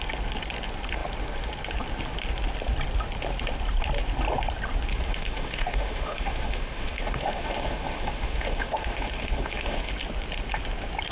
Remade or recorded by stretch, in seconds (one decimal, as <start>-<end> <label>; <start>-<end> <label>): 0.0-4.9 recorded; 4.9-9.9 remade; 9.9-11.1 recorded